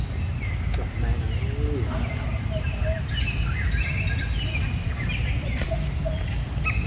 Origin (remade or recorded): recorded